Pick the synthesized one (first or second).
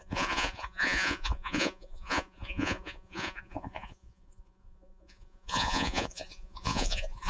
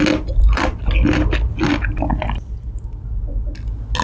first